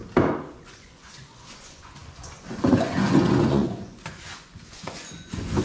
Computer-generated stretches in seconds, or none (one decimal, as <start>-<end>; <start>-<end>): 0.5-5.6